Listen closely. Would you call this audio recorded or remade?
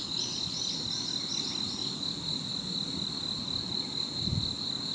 recorded